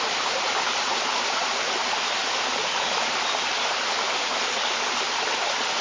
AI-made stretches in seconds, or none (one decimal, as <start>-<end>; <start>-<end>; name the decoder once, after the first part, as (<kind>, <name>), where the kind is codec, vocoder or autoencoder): none